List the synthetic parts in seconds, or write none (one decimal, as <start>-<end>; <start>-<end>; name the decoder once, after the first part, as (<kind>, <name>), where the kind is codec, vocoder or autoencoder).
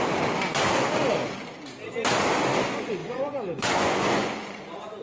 3.0-4.6 (vocoder, Vocos)